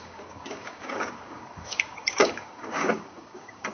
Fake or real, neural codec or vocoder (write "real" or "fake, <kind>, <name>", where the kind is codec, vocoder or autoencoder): fake, codec, DAC